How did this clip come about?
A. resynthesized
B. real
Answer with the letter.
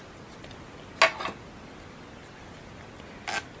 B